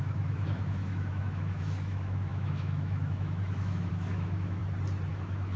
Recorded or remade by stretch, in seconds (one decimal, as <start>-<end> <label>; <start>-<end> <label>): 0.0-4.6 remade; 4.6-5.1 recorded; 5.1-5.6 remade